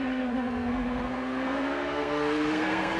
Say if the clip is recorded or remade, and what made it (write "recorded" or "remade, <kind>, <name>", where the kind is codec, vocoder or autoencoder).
remade, codec, SNAC